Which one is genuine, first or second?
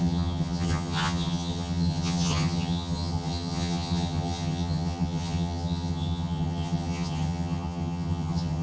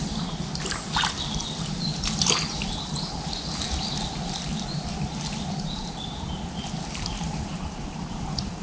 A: second